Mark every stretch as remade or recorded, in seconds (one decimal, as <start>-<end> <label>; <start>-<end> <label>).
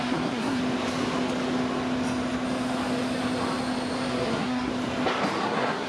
0.0-0.6 remade; 0.6-4.1 recorded; 4.1-4.7 remade; 4.7-5.4 recorded; 5.4-5.9 remade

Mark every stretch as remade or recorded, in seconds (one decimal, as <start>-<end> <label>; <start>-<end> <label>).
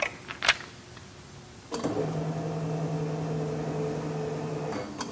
0.0-5.1 recorded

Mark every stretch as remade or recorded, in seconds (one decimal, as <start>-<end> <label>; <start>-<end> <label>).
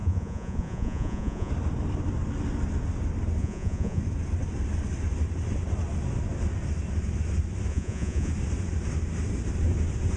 0.0-1.5 remade; 1.5-3.4 recorded; 3.4-4.0 remade; 4.0-7.7 recorded; 7.7-8.3 remade; 8.3-10.2 recorded